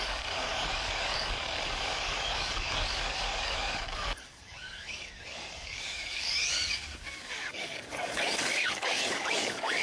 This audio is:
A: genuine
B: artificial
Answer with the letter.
B